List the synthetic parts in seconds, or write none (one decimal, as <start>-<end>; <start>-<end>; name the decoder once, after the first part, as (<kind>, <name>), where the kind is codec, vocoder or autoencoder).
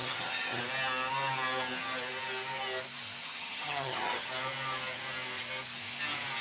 0.0-0.6 (vocoder, HiFi-GAN); 3.2-4.3